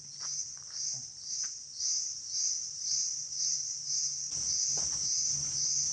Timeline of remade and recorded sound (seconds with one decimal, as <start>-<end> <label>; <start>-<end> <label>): 0.0-0.5 recorded; 0.5-4.0 remade; 4.0-5.9 recorded

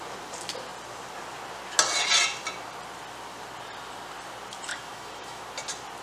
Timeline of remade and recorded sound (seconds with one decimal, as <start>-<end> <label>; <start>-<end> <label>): 0.0-4.7 recorded; 4.7-5.4 remade; 5.4-6.0 recorded

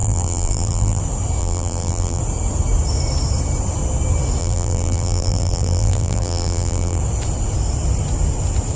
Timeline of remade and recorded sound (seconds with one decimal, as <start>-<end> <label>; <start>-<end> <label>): 0.0-1.0 remade; 1.0-1.4 recorded; 1.4-2.2 remade; 2.2-4.4 recorded; 4.4-7.0 remade; 7.0-8.8 recorded

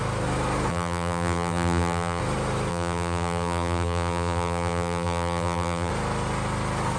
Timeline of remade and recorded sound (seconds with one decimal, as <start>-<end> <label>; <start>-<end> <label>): 0.0-0.7 recorded; 0.7-2.2 remade; 2.2-2.7 recorded; 2.7-5.9 remade; 5.9-7.0 recorded

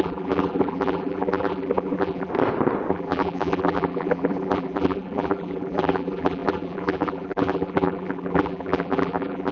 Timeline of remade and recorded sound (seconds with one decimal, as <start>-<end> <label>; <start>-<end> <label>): 0.0-2.3 remade; 2.3-2.9 recorded; 2.9-9.5 remade

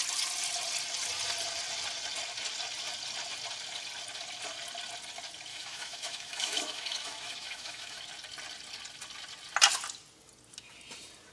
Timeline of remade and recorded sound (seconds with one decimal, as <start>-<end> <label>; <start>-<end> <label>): 0.0-5.5 recorded; 5.5-8.0 remade; 8.0-11.3 recorded

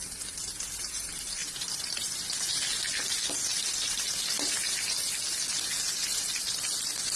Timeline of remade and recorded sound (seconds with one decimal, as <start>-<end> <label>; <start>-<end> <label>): 0.0-7.2 recorded

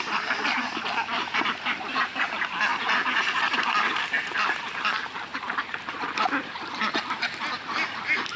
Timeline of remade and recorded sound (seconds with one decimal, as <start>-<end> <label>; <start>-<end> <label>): 0.0-2.7 remade; 2.7-4.0 recorded; 4.0-5.3 remade; 5.3-5.9 recorded; 5.9-8.4 remade